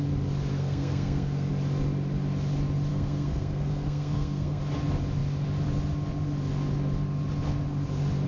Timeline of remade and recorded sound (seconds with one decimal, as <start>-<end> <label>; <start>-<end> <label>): 0.0-0.5 recorded; 0.5-1.5 remade; 1.5-2.9 recorded; 2.9-4.6 remade; 4.6-8.3 recorded